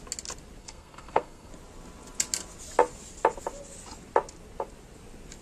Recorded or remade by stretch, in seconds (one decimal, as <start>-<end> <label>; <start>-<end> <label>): 0.0-0.6 recorded; 0.6-1.5 remade; 1.5-5.4 recorded